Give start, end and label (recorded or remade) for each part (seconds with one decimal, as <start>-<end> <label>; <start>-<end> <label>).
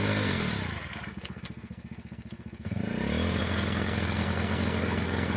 0.0-0.5 remade; 0.5-1.1 recorded; 1.1-2.8 remade; 2.8-3.4 recorded; 3.4-5.4 remade